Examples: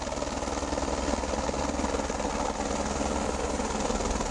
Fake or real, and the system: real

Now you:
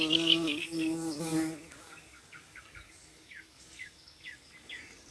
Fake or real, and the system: fake, codec, DAC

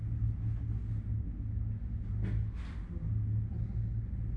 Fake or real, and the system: real